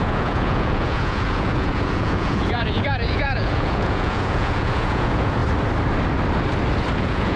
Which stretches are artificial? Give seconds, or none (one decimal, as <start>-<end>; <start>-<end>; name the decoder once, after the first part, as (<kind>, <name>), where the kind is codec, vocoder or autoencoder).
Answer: 0.0-5.4 (vocoder, Vocos); 7.0-7.4